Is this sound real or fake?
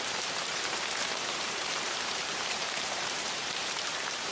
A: fake